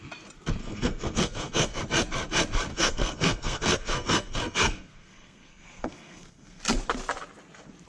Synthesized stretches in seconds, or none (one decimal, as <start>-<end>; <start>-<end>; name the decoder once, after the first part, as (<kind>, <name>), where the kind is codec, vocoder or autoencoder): 0.6-1.8 (codec, SNAC); 2.7-6.6